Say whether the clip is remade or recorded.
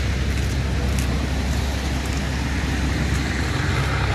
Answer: recorded